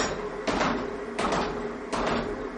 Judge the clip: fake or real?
real